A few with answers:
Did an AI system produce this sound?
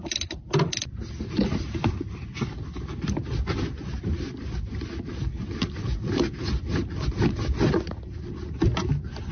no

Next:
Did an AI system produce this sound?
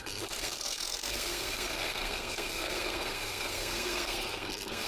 yes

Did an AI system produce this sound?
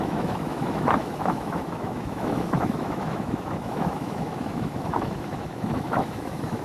yes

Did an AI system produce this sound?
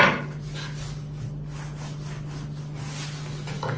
no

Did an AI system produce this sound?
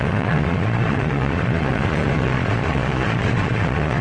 yes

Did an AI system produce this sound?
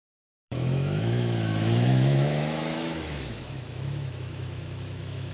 yes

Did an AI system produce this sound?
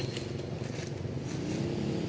no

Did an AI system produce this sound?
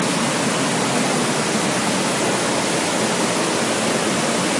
no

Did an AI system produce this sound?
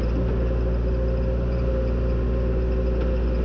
no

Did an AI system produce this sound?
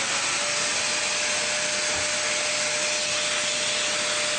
no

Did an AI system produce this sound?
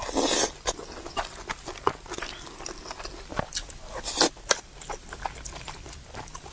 no